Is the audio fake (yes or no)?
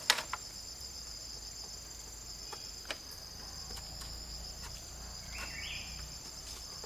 no